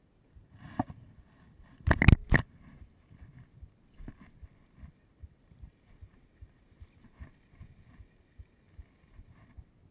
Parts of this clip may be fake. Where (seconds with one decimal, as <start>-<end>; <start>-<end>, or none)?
none